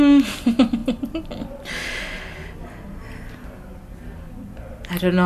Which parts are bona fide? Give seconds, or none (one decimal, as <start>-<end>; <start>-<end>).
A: 0.0-5.3